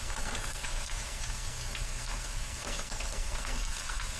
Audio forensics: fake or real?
fake